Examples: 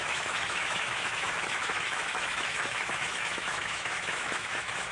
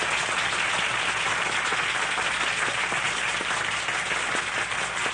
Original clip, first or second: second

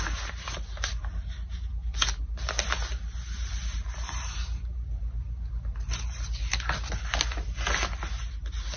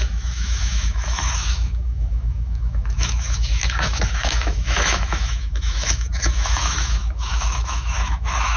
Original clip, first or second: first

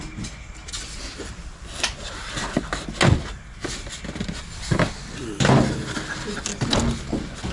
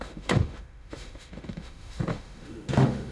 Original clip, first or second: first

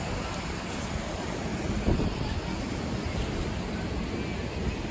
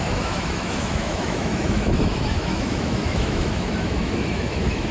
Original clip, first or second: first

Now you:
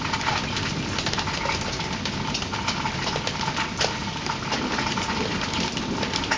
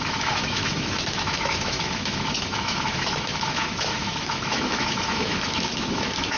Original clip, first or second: first